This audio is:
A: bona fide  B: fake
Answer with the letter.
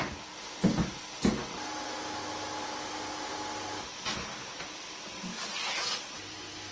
A